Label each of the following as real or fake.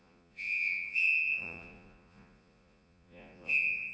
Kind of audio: fake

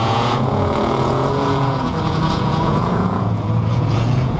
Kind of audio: fake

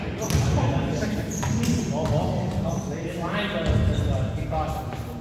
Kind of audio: real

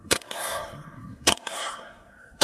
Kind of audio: fake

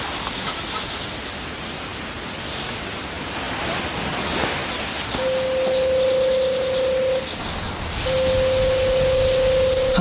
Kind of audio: real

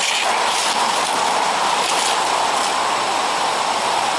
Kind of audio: real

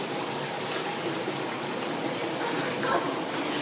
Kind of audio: real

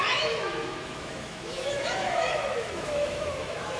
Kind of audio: fake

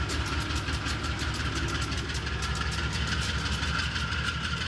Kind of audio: real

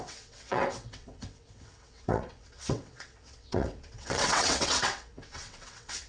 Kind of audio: fake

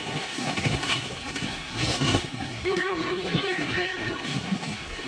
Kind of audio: fake